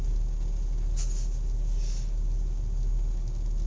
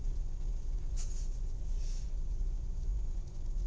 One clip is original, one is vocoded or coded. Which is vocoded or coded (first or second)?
second